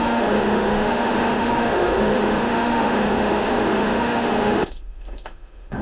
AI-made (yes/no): yes